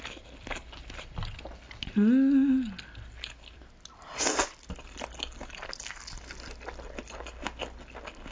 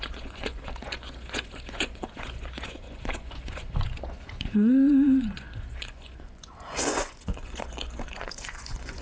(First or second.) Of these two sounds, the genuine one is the first